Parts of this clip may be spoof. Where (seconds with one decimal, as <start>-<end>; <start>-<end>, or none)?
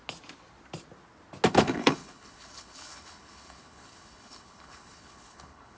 1.5-5.8